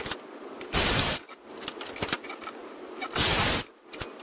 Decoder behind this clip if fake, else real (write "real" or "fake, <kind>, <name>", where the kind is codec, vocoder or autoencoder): real